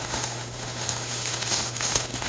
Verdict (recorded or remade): remade